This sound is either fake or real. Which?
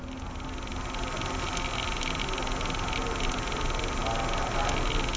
real